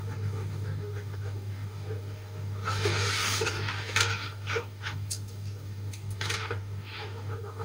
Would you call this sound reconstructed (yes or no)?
yes